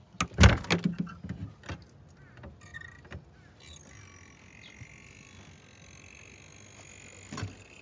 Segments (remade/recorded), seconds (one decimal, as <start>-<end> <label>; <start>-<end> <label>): 0.0-7.8 recorded